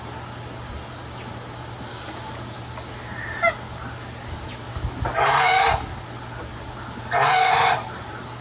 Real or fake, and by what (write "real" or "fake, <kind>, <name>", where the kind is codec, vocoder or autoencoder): real